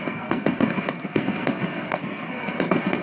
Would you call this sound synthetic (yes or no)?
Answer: yes